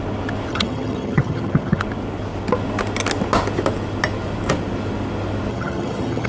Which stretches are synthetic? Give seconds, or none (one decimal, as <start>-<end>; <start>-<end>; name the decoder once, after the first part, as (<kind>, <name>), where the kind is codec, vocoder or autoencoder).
0.5-1.8 (vocoder, HiFi-GAN); 5.5-6.3